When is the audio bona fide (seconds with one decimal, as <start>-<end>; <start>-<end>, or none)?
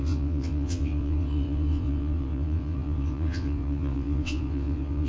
none